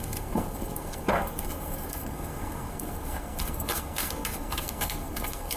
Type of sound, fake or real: fake